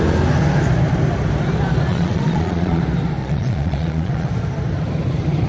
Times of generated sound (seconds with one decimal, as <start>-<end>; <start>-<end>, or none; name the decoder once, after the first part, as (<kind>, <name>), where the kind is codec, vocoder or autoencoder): 1.9-2.8 (vocoder, Vocos); 3.2-4.3